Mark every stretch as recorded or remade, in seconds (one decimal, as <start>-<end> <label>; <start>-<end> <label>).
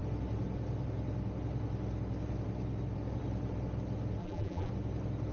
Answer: 0.0-4.2 recorded; 4.2-4.7 remade; 4.7-5.3 recorded